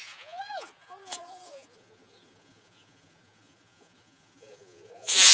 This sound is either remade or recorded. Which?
remade